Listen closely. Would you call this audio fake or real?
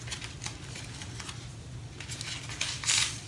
real